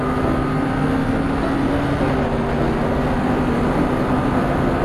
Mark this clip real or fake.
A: real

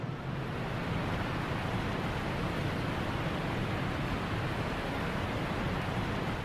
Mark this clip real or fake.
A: real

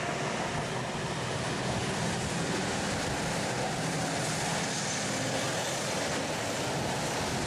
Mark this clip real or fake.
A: real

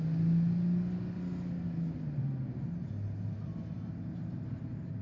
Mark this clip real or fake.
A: real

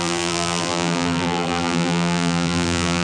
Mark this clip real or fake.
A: fake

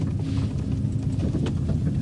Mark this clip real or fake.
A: real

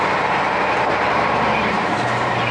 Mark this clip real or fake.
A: fake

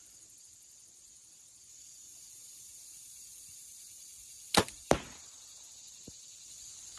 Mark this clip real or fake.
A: real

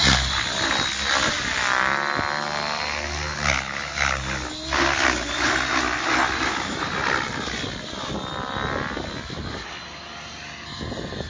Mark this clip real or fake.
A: real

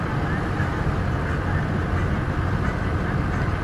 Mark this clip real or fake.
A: real